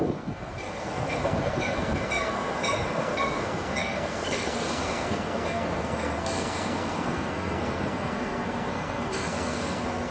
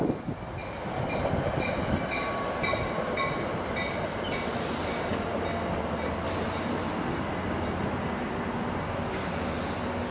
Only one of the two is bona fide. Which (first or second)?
second